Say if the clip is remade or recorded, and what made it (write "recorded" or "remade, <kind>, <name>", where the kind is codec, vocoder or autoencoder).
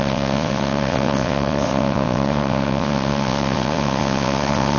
remade, vocoder, WaveNeXt